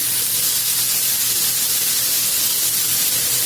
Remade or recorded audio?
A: recorded